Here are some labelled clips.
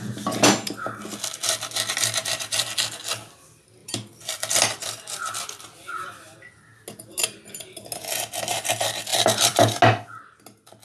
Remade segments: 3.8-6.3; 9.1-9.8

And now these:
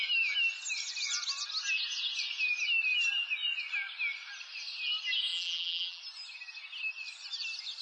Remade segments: 5.3-6.0

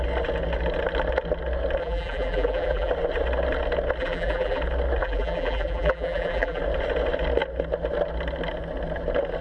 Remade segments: 1.8-2.9; 4.0-4.6; 5.0-6.6

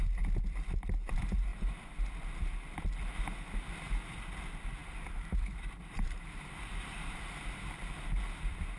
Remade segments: 4.8-7.3